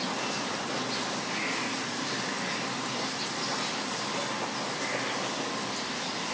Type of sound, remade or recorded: recorded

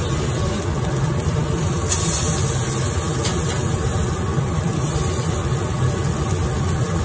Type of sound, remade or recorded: recorded